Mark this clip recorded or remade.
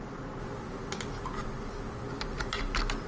recorded